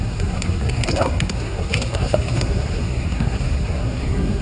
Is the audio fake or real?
fake